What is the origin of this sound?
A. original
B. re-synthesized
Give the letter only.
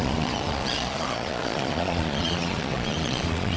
B